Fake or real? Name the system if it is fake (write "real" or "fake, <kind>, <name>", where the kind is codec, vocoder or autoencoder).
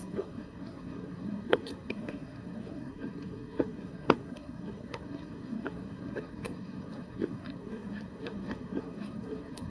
fake, codec, SNAC